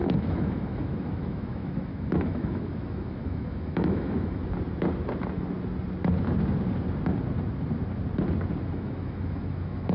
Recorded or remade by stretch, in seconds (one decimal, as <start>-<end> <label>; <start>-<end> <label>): 0.0-4.4 remade; 4.4-8.7 recorded; 8.7-9.9 remade